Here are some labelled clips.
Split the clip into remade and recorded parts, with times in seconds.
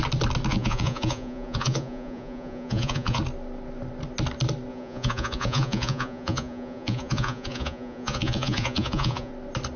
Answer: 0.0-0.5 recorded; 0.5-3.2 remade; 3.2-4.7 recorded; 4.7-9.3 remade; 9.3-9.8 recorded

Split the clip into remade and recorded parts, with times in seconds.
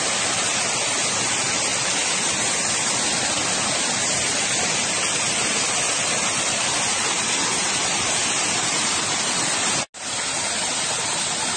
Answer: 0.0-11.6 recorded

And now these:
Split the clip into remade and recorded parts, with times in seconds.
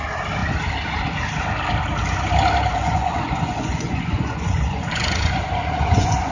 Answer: 0.0-2.7 recorded; 2.7-6.3 remade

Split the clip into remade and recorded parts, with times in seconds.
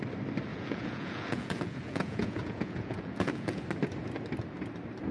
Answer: 0.0-0.5 recorded; 0.5-3.6 remade; 3.6-5.1 recorded